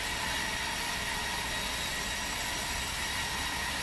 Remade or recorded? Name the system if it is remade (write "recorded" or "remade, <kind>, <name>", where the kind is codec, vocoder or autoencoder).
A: remade, vocoder, BigVGAN v2